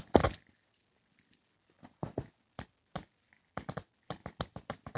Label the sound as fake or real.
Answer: real